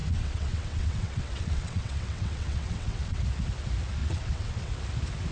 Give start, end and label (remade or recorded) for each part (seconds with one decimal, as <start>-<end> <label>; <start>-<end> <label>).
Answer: 0.0-3.2 remade; 3.2-4.0 recorded; 4.0-4.7 remade; 4.7-5.3 recorded